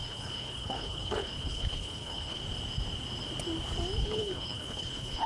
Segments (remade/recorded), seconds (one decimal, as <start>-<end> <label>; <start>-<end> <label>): 0.0-2.4 remade; 2.4-4.0 recorded; 4.0-5.3 remade